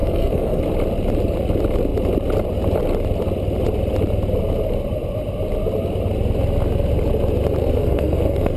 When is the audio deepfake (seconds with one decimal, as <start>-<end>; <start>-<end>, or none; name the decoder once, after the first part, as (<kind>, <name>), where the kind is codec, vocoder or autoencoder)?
0.0-0.6 (codec, SNAC); 7.6-8.6